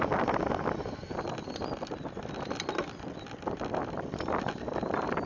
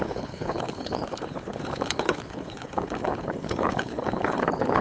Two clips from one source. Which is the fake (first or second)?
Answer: second